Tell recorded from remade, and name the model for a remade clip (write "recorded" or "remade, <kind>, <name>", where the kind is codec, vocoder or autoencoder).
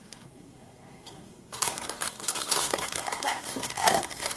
remade, codec, SNAC